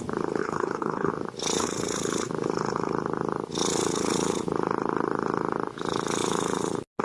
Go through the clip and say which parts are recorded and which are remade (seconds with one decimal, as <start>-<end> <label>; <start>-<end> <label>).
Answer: 0.0-0.4 recorded; 0.4-1.1 remade; 1.1-7.0 recorded